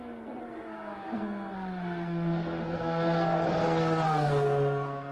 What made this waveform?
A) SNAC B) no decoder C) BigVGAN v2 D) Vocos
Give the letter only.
A